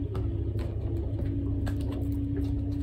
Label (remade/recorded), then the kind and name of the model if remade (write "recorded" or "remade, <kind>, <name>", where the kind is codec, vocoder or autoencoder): recorded